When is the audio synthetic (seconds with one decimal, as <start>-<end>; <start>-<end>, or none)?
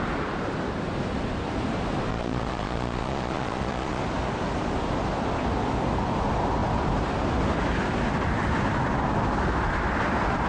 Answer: 2.1-4.0